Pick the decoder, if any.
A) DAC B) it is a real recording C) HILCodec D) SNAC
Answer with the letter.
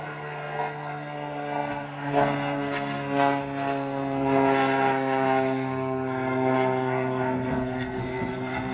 D